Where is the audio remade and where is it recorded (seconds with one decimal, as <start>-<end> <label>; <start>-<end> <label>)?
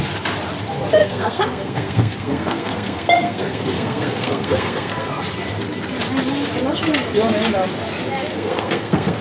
0.0-1.0 recorded; 1.0-5.2 remade; 5.2-8.3 recorded; 8.3-9.2 remade